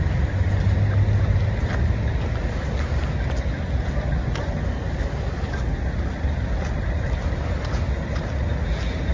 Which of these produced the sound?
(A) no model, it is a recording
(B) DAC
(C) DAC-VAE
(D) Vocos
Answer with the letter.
A